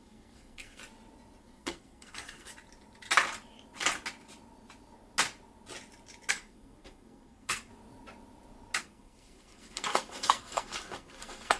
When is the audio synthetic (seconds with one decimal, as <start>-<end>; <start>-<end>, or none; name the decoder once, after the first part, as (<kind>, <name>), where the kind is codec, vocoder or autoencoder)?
0.0-0.8 (codec, SNAC); 1.4-2.5; 6.3-7.7; 8.8-11.6